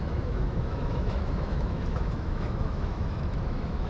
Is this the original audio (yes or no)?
no